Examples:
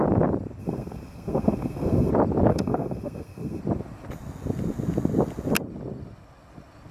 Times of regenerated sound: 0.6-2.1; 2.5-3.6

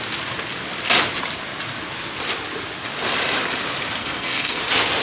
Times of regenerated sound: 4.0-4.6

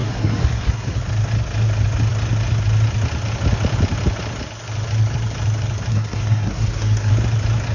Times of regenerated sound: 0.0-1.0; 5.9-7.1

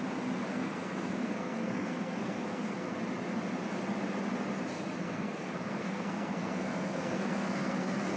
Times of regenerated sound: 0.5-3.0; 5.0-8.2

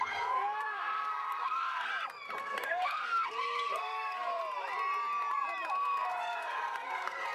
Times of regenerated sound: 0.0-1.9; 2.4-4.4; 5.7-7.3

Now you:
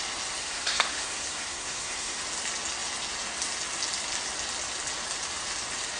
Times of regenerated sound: 0.4-2.2